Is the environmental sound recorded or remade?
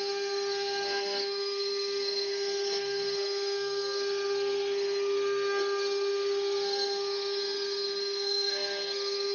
remade